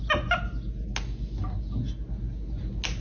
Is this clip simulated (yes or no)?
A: no